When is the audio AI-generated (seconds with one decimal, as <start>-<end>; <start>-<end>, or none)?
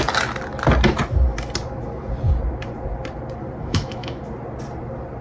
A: 3.6-4.2